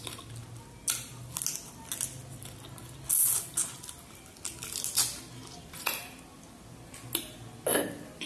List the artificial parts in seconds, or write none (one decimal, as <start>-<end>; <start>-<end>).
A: none